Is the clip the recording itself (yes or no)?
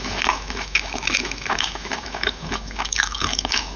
no